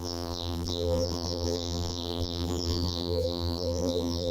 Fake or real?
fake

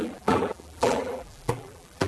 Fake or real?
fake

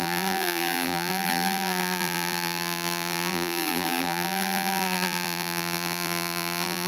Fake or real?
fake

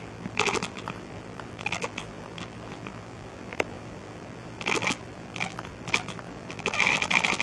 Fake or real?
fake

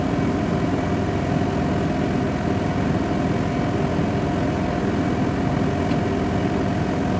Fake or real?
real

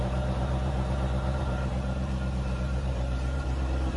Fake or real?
fake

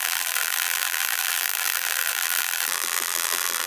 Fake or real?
fake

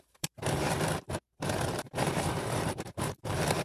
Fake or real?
fake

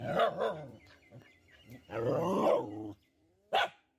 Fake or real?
real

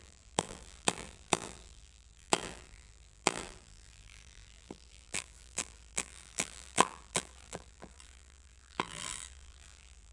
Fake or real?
fake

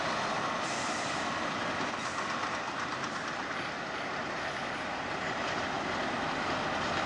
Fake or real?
real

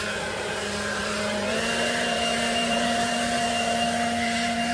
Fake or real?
fake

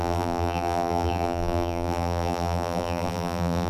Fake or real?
fake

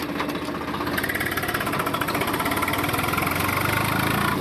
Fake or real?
real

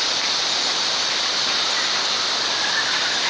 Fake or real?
fake